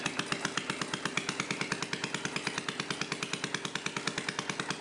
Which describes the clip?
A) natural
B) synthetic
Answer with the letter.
A